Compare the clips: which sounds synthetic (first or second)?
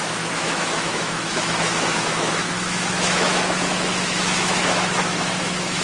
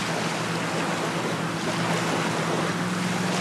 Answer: first